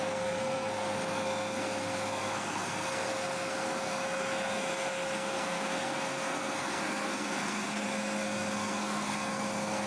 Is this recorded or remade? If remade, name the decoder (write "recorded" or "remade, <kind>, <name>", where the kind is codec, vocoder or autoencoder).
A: remade, codec, SNAC